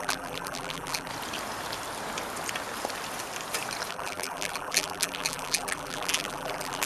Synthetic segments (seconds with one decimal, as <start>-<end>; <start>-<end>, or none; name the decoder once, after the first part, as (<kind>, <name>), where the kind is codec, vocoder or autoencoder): 0.0-1.1 (vocoder, BigVGAN v2); 3.9-6.8